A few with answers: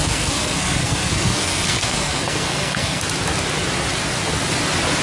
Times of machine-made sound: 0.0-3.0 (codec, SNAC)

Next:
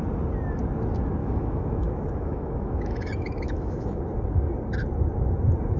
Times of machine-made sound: 1.2-4.0 (autoencoder, DAC-VAE)

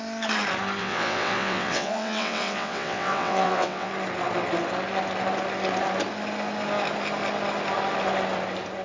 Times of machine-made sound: 0.8-3.9 (vocoder, WaveNeXt)

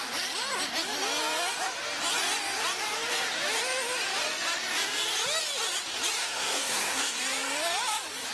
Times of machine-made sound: 6.2-7.2 (codec, SNAC)

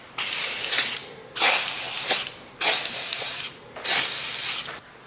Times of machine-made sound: none

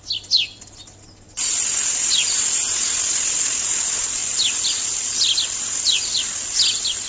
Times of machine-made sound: none